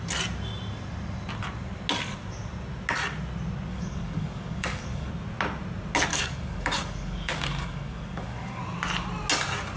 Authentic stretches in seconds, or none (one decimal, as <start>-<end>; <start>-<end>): 0.0-3.7; 5.1-6.1; 8.6-9.8